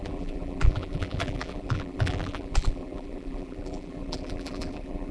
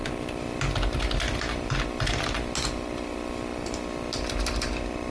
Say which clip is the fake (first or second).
first